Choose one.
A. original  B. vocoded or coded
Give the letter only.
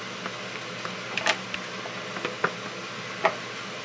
A